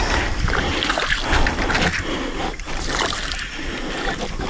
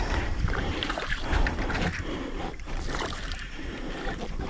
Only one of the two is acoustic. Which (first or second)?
first